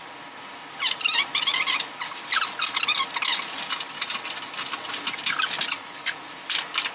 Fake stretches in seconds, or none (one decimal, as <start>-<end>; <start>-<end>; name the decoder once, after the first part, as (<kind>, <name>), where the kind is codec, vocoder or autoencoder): none